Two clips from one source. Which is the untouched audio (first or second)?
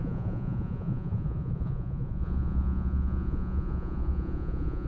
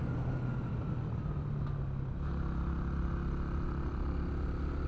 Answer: second